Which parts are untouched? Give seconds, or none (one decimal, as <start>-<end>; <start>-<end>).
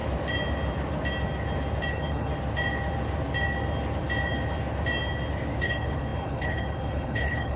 0.0-1.9; 2.3-5.6